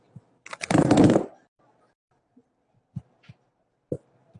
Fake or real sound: real